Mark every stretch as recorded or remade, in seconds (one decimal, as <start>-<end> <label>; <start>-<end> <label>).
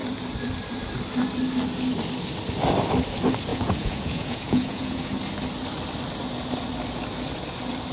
0.0-3.5 recorded; 3.5-5.0 remade; 5.0-7.9 recorded